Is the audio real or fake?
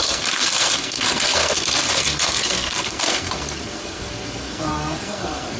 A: fake